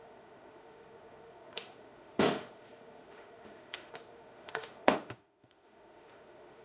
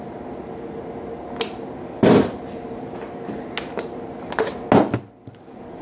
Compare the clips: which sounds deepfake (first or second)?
first